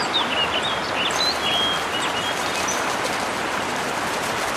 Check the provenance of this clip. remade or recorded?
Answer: recorded